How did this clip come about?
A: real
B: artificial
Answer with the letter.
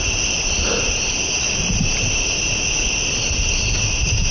A